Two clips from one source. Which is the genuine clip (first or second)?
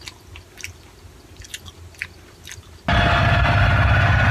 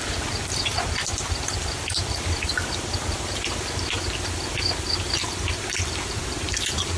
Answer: first